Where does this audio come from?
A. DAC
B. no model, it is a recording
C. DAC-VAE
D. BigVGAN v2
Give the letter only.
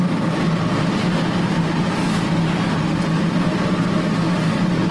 B